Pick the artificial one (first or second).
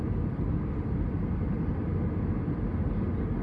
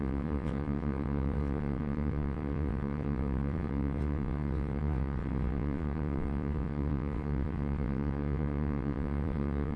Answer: second